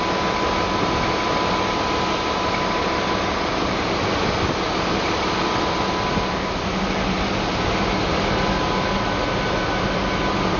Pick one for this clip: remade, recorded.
recorded